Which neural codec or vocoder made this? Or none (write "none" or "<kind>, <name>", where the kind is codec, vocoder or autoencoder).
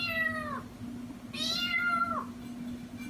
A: none